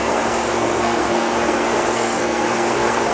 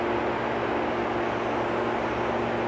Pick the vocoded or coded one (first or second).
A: first